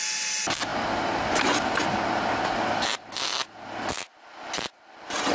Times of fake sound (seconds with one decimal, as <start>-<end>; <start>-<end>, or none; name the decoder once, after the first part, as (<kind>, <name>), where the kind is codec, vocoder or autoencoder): none